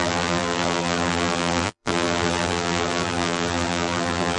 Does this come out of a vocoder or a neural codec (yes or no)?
yes